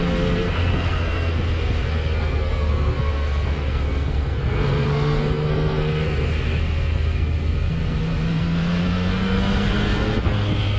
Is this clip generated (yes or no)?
yes